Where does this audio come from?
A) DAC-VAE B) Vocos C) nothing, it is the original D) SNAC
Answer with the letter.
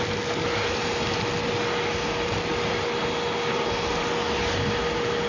C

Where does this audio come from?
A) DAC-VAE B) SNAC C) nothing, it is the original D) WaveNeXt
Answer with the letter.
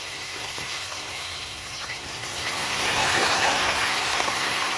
B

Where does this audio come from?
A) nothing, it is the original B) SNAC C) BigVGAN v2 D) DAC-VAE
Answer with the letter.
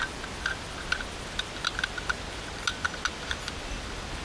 A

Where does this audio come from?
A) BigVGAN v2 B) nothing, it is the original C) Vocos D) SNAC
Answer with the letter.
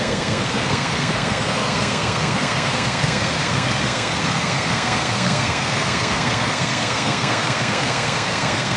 D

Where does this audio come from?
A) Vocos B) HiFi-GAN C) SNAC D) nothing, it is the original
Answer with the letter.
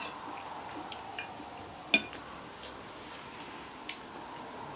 D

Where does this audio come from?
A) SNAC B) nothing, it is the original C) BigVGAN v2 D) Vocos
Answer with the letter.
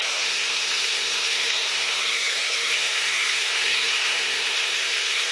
A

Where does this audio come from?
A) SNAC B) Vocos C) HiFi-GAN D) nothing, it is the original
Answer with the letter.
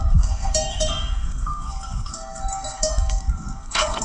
A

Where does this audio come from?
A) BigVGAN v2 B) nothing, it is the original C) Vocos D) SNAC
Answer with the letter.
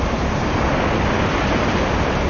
B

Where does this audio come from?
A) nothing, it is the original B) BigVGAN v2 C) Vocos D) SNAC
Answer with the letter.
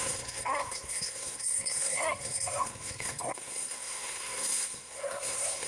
D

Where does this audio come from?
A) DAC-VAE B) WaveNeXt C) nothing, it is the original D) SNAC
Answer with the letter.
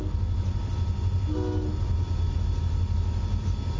C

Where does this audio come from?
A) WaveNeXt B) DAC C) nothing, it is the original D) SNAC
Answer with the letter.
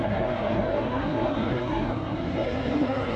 D